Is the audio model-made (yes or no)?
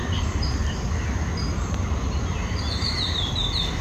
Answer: yes